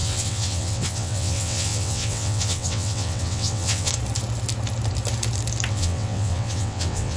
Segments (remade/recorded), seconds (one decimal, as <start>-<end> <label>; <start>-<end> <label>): 0.0-3.9 remade; 3.9-5.7 recorded; 5.7-7.2 remade